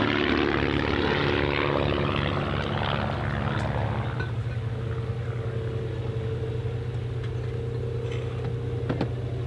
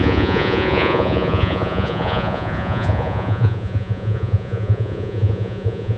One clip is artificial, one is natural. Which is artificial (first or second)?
second